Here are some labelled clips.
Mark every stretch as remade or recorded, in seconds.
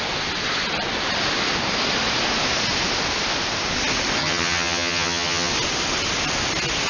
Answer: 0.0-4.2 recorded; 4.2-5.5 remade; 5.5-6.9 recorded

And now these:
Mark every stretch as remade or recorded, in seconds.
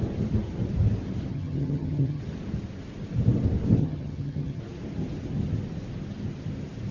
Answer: 0.0-1.3 recorded; 1.3-2.2 remade; 2.2-3.8 recorded; 3.8-4.6 remade; 4.6-6.9 recorded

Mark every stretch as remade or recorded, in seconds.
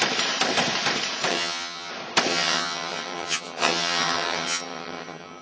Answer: 0.0-1.3 recorded; 1.3-1.9 remade; 1.9-2.3 recorded; 2.3-5.4 remade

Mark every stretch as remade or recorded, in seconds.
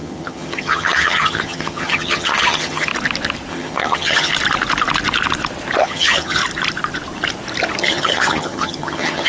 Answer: 0.0-2.9 remade; 2.9-3.5 recorded; 3.5-4.3 remade; 4.3-5.8 recorded; 5.8-6.4 remade; 6.4-7.8 recorded; 7.8-9.3 remade